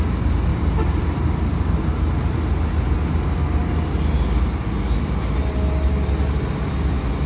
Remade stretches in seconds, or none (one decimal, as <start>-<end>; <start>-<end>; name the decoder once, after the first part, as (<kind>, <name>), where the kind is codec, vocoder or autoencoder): 0.5-1.9 (vocoder, BigVGAN v2)